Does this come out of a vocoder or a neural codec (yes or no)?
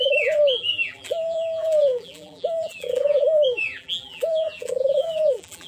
yes